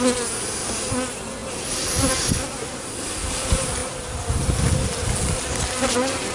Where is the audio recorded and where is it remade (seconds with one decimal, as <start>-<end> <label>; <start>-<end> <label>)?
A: 0.0-6.3 recorded